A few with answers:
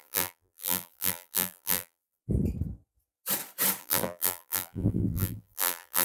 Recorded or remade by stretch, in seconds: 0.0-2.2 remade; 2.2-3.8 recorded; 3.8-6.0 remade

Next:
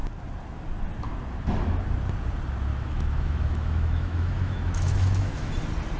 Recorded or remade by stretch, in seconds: 0.0-2.7 recorded; 2.7-5.5 remade; 5.5-6.0 recorded